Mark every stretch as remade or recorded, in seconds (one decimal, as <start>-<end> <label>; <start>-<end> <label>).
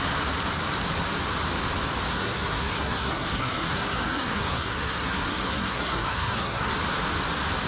0.0-2.1 recorded; 2.1-6.7 remade; 6.7-7.7 recorded